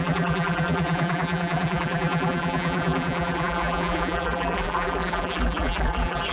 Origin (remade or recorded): remade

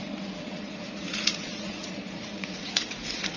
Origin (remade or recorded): remade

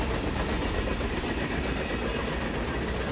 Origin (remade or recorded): recorded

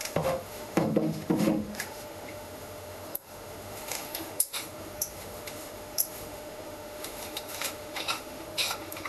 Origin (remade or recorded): remade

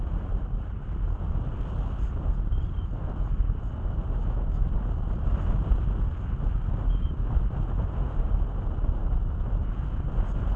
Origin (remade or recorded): recorded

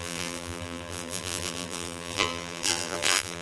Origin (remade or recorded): remade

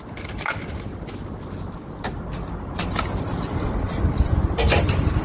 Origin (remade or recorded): recorded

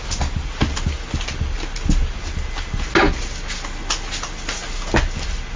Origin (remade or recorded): recorded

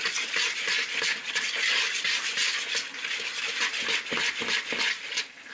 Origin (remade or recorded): recorded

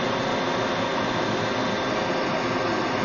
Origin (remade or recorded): recorded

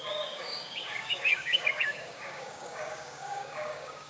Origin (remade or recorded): remade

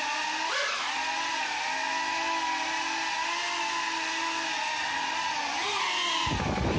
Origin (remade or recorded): recorded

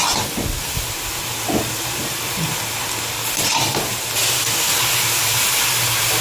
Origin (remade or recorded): recorded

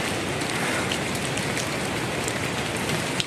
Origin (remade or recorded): recorded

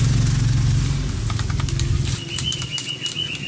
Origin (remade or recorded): recorded